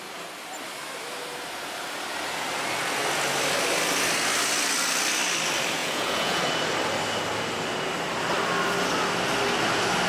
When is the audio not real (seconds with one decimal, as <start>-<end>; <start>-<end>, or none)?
5.8-6.4